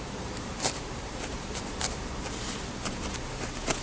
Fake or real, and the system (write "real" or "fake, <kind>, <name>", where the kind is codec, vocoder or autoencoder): fake, vocoder, BigVGAN v2